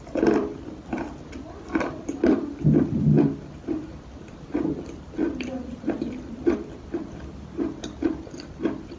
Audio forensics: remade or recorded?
remade